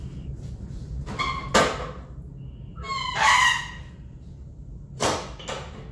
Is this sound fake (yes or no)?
no